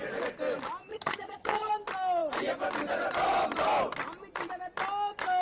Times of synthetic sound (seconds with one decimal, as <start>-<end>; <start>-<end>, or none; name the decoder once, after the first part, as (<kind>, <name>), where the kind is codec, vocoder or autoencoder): 0.9-1.7 (vocoder, HiFi-GAN)